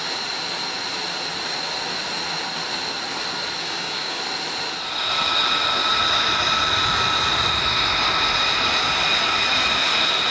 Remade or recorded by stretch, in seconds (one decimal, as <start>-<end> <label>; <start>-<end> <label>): 0.0-3.6 recorded; 3.6-4.2 remade; 4.2-10.3 recorded